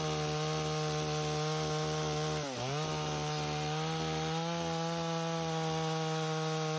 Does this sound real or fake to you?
real